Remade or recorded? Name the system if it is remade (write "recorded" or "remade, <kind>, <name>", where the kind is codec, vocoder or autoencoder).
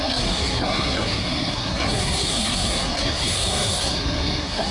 remade, codec, SNAC